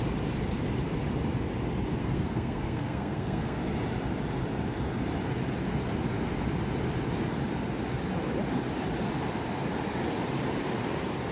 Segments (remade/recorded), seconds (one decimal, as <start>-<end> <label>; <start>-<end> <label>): 0.0-2.0 recorded; 2.0-3.6 remade; 3.6-11.3 recorded